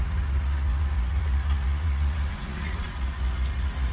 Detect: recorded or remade remade